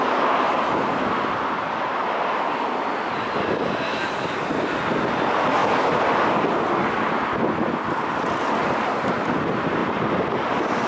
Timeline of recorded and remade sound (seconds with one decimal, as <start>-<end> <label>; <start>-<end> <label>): 0.0-10.9 recorded